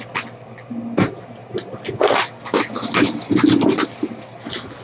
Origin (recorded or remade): recorded